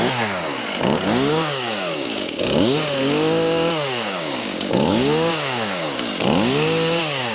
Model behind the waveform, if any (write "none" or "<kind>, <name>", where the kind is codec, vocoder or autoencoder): codec, DAC